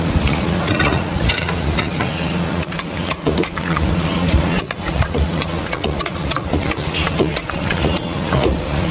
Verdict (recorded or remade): remade